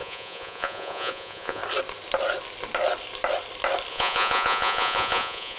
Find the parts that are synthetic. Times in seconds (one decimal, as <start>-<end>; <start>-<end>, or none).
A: 0.0-1.6; 3.9-5.6

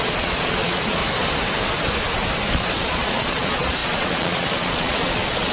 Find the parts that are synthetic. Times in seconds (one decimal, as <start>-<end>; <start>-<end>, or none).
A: 0.0-1.0; 2.5-5.5

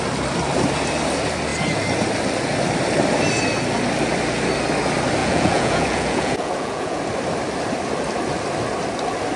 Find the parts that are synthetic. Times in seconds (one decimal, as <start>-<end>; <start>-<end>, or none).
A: 5.2-7.0

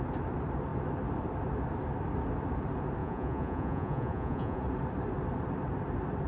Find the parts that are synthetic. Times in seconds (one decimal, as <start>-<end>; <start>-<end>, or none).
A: 3.0-4.6

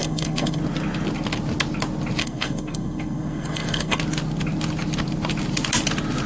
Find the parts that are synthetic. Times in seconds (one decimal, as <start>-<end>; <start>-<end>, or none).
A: 0.0-0.6; 2.2-4.0

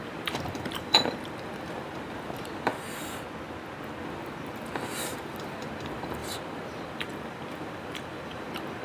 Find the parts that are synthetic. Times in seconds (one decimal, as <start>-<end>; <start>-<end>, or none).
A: 0.0-2.7; 4.0-8.8

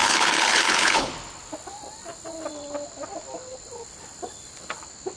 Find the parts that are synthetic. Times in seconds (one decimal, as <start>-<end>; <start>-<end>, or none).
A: 0.0-1.1

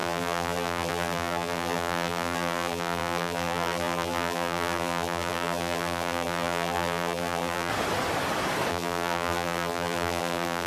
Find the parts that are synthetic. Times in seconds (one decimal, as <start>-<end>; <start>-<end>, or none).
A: 0.0-7.7; 8.7-10.7